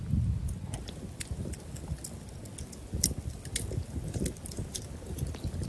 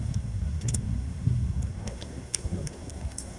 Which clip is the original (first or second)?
first